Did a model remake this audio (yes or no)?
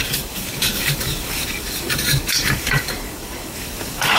yes